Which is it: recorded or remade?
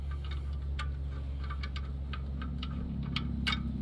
recorded